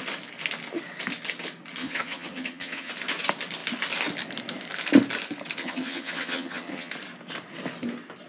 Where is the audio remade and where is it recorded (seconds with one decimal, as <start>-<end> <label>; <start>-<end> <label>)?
0.0-1.8 recorded; 1.8-2.9 remade; 2.9-5.6 recorded; 5.6-6.9 remade; 6.9-8.3 recorded